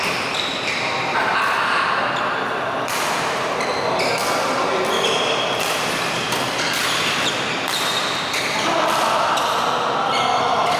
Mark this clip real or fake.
real